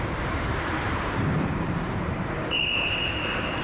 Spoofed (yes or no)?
yes